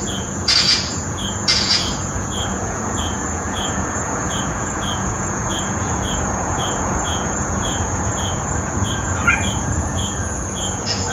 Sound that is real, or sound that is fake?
fake